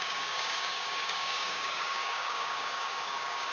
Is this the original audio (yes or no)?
no